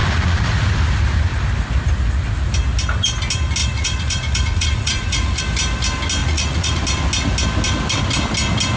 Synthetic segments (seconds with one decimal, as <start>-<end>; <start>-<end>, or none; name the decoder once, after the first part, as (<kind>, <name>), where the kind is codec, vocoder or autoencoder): 0.0-0.8 (vocoder, Vocos); 3.6-5.4; 6.2-6.8